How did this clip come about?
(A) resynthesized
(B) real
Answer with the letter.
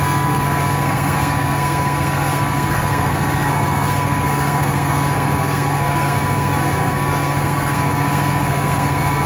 A